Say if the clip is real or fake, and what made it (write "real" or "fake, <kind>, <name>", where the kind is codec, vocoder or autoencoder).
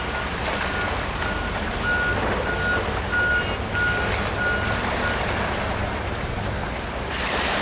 real